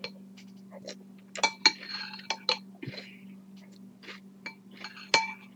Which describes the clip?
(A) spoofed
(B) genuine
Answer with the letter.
B